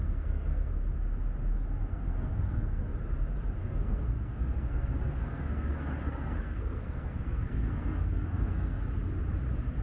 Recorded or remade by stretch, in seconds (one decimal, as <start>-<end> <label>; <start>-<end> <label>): 0.0-0.7 remade; 0.7-1.9 recorded; 1.9-2.8 remade; 2.8-3.6 recorded; 3.6-8.8 remade; 8.8-9.8 recorded